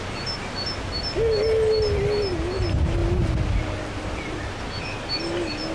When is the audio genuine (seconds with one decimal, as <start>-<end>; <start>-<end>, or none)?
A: 0.0-5.7